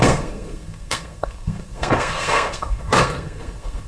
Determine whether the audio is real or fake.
fake